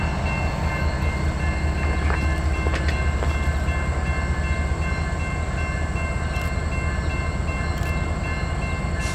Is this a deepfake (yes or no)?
no